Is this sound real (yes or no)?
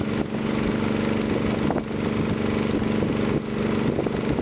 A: yes